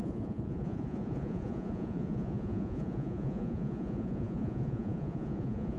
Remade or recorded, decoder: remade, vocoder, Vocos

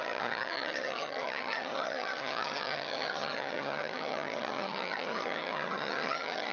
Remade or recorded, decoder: remade, vocoder, HiFi-GAN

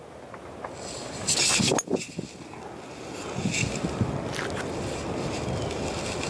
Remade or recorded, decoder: recorded